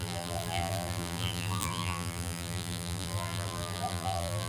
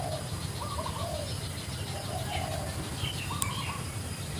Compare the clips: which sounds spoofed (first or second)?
first